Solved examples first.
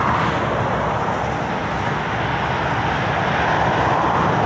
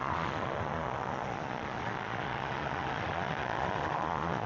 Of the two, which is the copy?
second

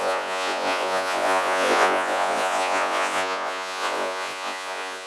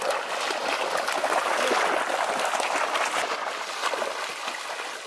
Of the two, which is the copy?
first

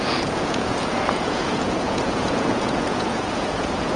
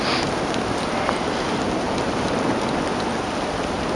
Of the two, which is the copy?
first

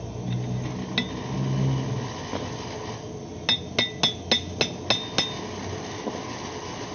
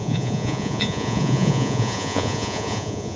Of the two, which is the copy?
second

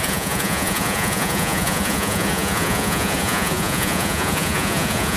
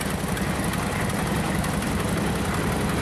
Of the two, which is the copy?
first